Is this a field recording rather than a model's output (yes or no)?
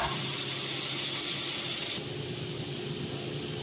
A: yes